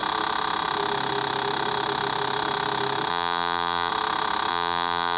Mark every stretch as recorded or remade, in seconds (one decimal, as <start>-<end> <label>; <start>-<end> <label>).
0.0-3.1 recorded; 3.1-3.9 remade; 3.9-4.5 recorded; 4.5-5.2 remade